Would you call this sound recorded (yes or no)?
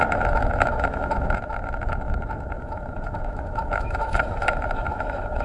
no